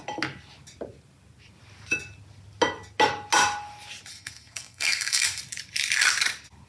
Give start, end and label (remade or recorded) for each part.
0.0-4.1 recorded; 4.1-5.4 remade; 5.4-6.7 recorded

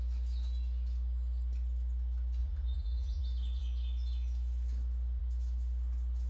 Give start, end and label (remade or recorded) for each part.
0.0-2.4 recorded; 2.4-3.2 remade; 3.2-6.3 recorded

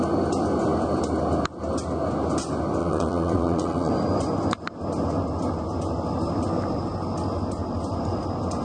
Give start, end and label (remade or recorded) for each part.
0.0-2.8 recorded; 2.8-3.9 remade; 3.9-8.6 recorded

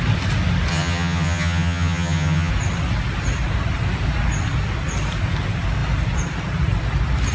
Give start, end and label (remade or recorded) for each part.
0.0-0.7 recorded; 0.7-2.5 remade; 2.5-7.3 recorded

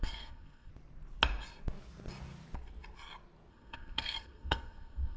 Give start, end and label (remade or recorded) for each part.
0.0-0.7 remade; 0.7-3.5 recorded; 3.5-5.2 remade

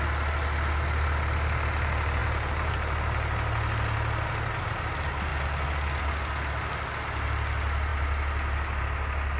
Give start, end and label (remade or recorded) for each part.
0.0-9.4 recorded

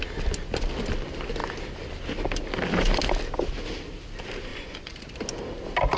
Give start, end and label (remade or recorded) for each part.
0.0-4.5 recorded; 4.5-5.0 remade; 5.0-6.0 recorded

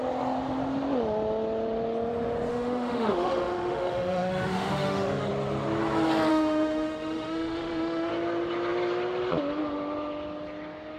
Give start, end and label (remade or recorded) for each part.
0.0-2.5 recorded; 2.5-5.3 remade; 5.3-6.3 recorded; 6.3-8.1 remade; 8.1-11.0 recorded